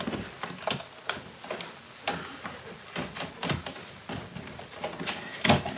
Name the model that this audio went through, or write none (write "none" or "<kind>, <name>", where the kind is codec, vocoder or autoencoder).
none